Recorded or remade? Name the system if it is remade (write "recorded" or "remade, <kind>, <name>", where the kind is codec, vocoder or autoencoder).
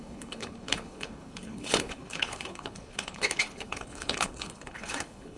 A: remade, codec, HILCodec